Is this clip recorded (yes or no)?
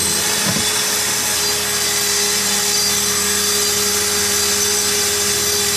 yes